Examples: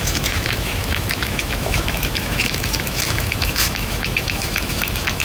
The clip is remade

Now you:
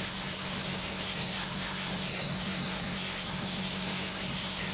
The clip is remade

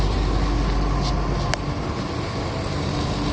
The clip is recorded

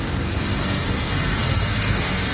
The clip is remade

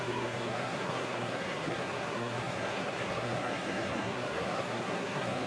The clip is remade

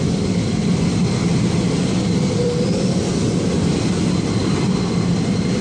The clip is recorded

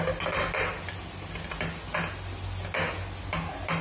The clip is recorded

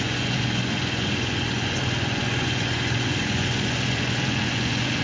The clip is remade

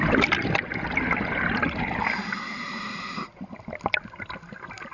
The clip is recorded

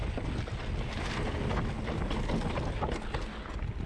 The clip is recorded